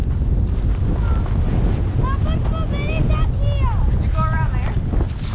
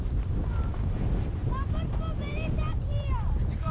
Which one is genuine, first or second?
first